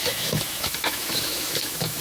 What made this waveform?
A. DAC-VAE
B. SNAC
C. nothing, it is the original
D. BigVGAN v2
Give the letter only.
A